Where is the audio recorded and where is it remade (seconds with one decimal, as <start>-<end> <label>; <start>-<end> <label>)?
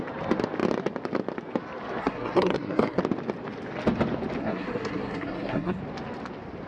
0.0-2.0 recorded; 2.0-3.0 remade; 3.0-4.4 recorded; 4.4-5.8 remade; 5.8-6.7 recorded